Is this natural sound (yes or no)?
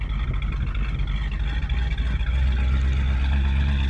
yes